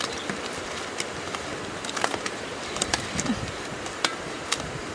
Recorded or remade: remade